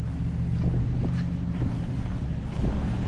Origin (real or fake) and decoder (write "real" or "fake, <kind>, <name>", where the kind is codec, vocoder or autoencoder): real